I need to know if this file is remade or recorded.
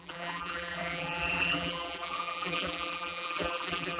remade